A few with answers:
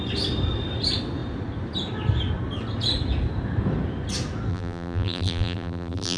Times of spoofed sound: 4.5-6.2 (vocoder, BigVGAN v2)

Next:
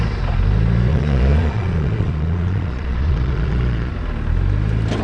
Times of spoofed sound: 0.9-3.9 (vocoder, Vocos)

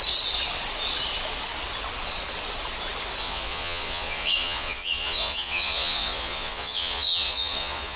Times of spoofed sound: 3.2-8.0 (vocoder, Vocos)

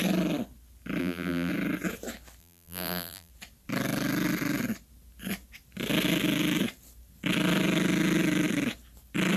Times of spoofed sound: 1.0-1.5 (vocoder, BigVGAN v2); 2.4-3.3

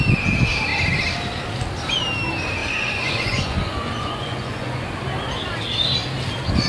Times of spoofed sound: 2.6-5.0 (vocoder, Vocos)

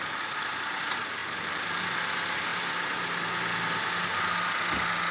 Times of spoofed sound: 1.2-1.9 (vocoder, BigVGAN v2)

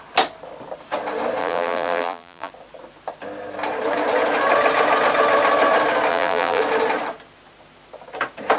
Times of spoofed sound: 1.4-2.5 (vocoder, BigVGAN v2); 6.1-6.6

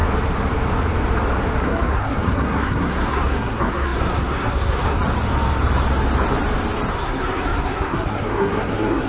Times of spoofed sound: 1.6-5.0 (codec, SNAC); 6.9-9.1